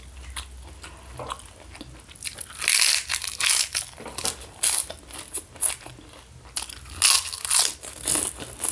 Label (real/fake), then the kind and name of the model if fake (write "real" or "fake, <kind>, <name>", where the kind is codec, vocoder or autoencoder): real